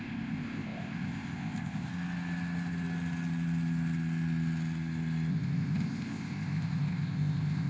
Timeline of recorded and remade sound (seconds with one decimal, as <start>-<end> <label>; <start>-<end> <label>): 0.0-1.9 remade; 1.9-5.3 recorded; 5.3-7.7 remade